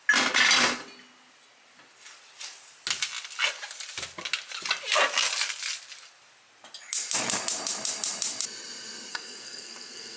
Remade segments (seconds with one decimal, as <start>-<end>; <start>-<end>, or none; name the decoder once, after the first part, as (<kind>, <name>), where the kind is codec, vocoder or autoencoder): 9.1-10.2 (codec, SNAC)